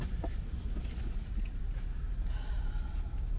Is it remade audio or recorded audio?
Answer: recorded